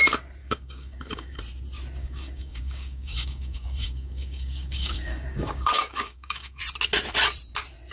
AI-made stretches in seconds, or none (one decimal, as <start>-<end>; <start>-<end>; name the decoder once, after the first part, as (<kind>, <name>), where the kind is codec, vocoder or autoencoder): 0.4-1.4 (codec, DAC); 2.0-6.6